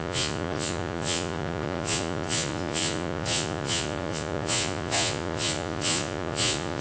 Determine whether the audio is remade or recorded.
remade